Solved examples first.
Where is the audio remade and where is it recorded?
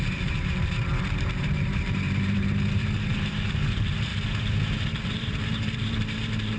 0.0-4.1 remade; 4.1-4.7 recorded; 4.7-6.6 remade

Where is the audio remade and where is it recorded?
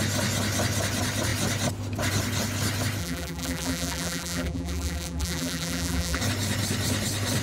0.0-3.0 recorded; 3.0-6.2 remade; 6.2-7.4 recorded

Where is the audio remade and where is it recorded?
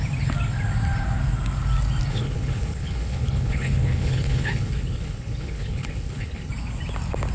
0.0-2.1 recorded; 2.1-6.5 remade; 6.5-7.3 recorded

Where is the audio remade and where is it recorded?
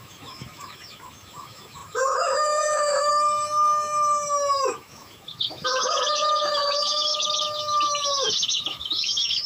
0.0-9.5 remade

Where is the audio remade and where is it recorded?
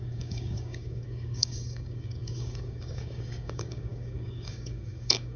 0.0-5.4 remade